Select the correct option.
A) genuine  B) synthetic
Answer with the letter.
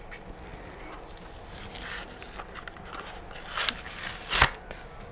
A